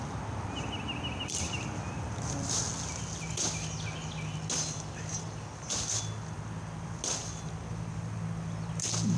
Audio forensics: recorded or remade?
recorded